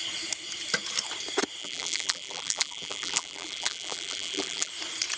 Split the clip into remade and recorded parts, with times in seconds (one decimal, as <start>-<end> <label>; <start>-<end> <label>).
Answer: 0.0-1.6 recorded; 1.6-4.7 remade; 4.7-5.2 recorded